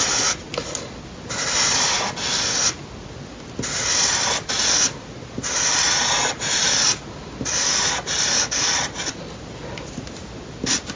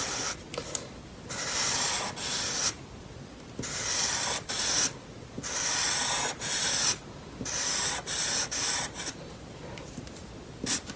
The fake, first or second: second